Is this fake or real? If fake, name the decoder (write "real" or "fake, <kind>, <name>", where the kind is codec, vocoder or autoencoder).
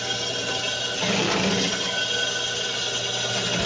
real